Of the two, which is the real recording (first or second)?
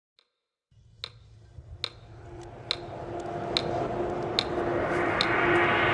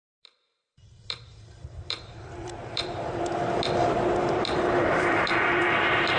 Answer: first